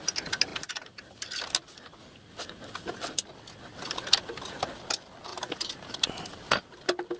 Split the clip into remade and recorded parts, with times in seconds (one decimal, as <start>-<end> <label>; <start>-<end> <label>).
0.0-0.5 recorded; 0.5-1.1 remade; 1.1-5.3 recorded; 5.3-6.1 remade; 6.1-7.2 recorded